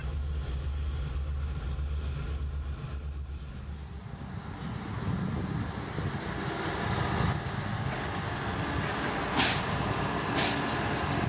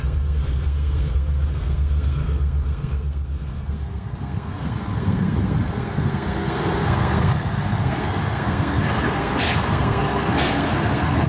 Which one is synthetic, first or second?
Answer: second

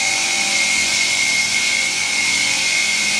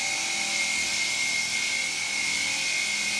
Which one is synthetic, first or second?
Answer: first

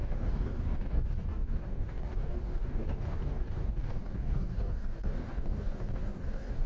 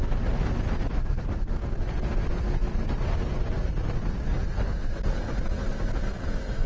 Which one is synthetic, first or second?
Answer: first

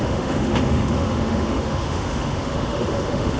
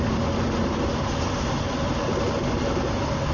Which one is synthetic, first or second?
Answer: first